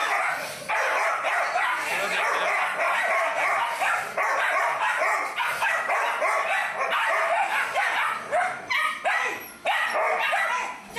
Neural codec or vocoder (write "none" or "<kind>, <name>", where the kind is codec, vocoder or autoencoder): none